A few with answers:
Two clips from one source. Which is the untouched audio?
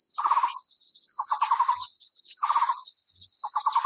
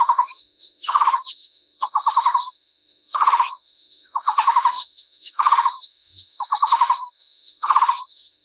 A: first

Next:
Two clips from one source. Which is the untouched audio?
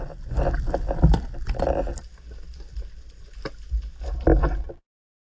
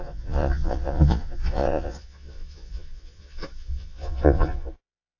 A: first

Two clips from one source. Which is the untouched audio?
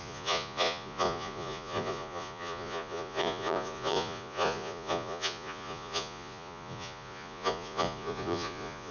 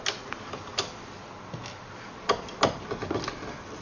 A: second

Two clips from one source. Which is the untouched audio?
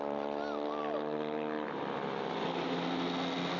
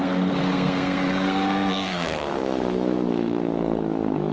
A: first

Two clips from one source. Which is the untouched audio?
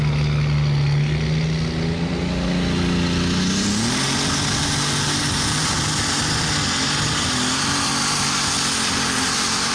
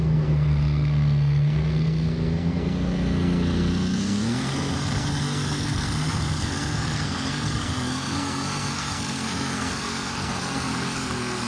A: first